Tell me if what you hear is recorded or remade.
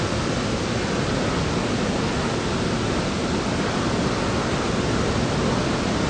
recorded